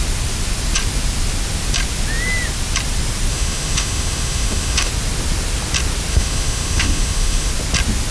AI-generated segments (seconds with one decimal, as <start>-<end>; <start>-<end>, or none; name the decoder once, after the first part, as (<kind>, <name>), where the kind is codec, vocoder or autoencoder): 3.3-4.9 (autoencoder, DAC-VAE); 6.1-7.5